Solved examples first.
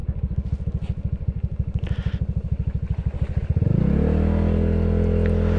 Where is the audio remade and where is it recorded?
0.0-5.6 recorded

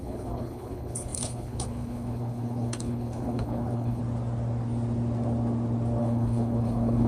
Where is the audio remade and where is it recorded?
0.0-4.0 remade; 4.0-6.0 recorded; 6.0-7.1 remade

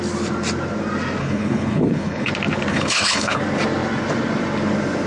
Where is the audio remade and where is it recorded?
0.0-1.2 recorded; 1.2-2.3 remade; 2.3-2.7 recorded; 2.7-3.4 remade; 3.4-5.1 recorded

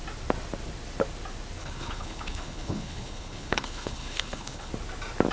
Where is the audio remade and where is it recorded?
0.0-1.6 recorded; 1.6-4.7 remade; 4.7-5.3 recorded